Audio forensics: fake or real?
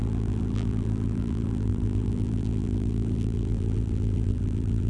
fake